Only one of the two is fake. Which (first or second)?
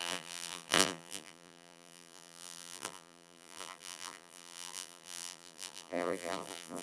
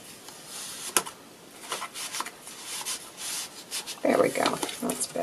first